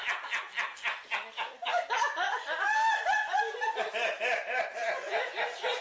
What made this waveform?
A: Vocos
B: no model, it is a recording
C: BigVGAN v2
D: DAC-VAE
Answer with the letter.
B